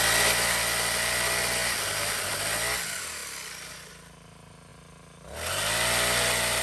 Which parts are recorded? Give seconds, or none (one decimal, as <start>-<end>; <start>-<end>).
0.0-6.6